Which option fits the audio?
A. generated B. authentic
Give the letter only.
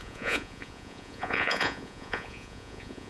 A